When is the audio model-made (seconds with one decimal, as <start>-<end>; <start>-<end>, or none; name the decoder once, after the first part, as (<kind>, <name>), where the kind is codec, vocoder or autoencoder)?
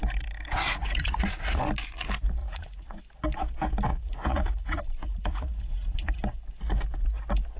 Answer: 0.8-1.6 (vocoder, Vocos); 2.4-3.0; 3.9-6.2